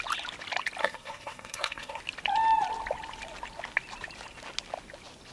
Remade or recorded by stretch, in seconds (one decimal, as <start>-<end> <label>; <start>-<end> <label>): 0.0-0.8 recorded; 0.8-2.0 remade; 2.0-5.3 recorded